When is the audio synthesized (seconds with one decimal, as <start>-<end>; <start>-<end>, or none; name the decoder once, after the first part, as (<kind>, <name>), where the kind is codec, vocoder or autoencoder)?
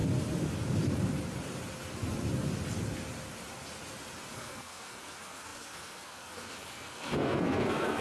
4.3-8.0 (codec, SNAC)